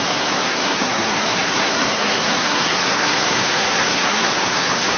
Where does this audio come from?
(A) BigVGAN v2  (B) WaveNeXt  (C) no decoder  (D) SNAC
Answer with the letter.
D